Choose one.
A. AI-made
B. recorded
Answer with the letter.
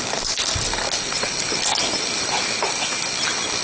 B